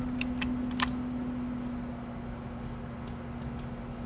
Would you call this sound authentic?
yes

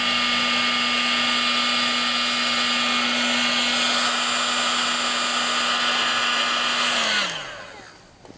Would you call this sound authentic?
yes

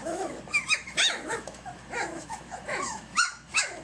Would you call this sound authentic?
no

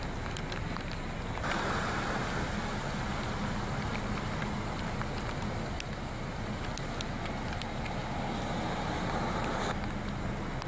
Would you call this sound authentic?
yes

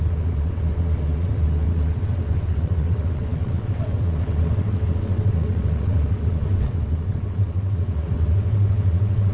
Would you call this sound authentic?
no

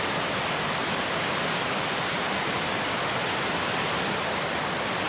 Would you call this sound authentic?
no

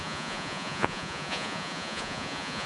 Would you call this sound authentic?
no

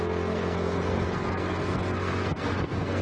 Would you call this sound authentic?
no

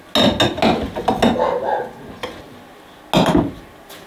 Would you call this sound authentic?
yes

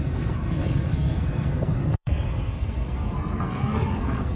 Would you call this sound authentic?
no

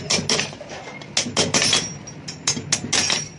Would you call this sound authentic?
yes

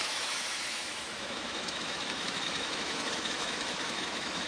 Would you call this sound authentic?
no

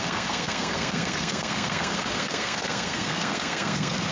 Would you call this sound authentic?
no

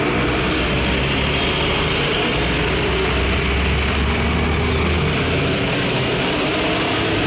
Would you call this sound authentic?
yes